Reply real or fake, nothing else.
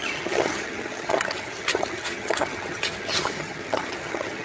fake